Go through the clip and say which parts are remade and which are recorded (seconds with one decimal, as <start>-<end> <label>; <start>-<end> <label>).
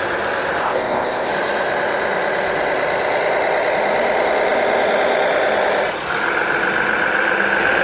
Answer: 0.0-0.6 recorded; 0.6-1.3 remade; 1.3-7.8 recorded